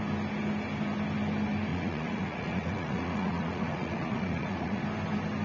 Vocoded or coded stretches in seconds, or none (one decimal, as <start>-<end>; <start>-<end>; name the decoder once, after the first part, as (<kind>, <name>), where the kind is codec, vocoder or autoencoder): 1.7-4.8 (vocoder, Vocos)